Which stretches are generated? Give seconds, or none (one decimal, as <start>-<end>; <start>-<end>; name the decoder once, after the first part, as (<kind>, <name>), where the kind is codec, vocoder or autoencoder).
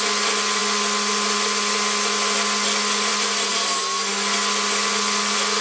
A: none